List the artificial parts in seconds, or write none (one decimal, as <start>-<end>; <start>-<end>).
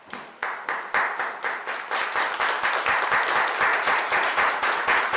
3.7-5.2